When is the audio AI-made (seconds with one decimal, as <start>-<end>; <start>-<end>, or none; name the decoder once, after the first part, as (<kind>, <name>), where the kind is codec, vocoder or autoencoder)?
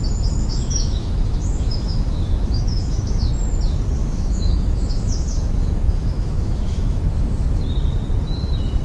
0.4-3.3 (autoencoder, DAC-VAE); 4.0-7.6